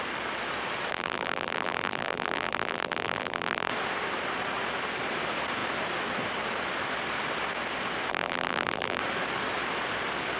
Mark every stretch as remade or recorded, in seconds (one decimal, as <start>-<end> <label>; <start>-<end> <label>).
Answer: 0.0-0.9 recorded; 0.9-3.7 remade; 3.7-8.1 recorded; 8.1-9.0 remade; 9.0-10.4 recorded